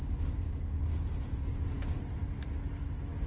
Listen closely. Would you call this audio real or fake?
real